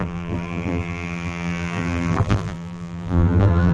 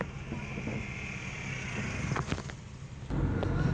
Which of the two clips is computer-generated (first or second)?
first